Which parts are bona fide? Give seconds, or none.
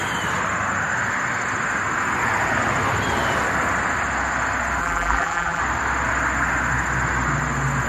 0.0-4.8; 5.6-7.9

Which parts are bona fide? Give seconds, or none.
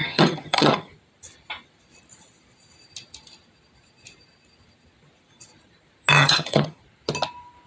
0.9-6.2; 6.8-7.7